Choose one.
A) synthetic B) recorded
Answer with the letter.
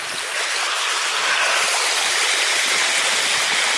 B